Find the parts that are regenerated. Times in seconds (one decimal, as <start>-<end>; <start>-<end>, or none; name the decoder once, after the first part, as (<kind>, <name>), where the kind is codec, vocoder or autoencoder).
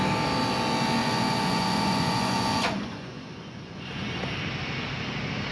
1.0-4.3 (vocoder, Vocos)